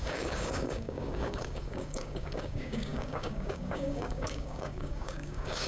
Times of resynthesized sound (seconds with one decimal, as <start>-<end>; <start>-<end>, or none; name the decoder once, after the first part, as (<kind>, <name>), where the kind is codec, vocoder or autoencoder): 0.0-5.7 (codec, DAC)